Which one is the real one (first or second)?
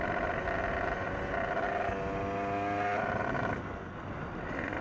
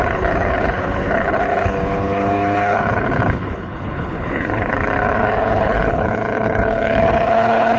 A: first